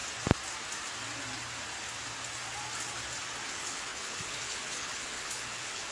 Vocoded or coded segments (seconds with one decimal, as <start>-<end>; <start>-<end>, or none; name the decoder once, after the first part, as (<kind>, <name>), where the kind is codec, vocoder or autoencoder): 3.5-5.9 (codec, HILCodec)